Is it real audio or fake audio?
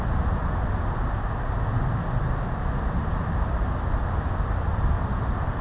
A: real